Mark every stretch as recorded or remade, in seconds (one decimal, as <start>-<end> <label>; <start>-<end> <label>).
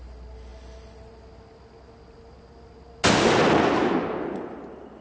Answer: 0.0-5.0 recorded